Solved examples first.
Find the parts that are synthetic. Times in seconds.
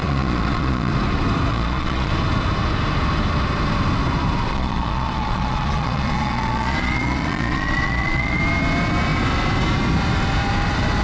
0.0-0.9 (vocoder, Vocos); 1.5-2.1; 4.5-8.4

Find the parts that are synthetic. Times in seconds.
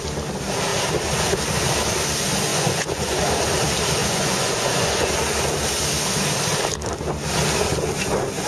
2.5-3.2 (vocoder, Vocos); 4.0-5.1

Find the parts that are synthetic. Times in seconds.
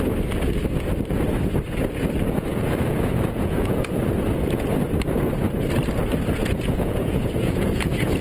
2.5-4.1 (vocoder, Vocos); 6.4-8.2